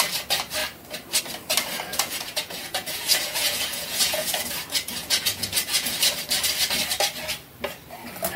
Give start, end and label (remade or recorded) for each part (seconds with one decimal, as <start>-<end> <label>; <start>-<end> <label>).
0.0-1.9 recorded; 1.9-4.4 remade; 4.4-5.0 recorded; 5.0-6.0 remade; 6.0-8.4 recorded